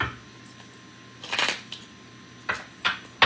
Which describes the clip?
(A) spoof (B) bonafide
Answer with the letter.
B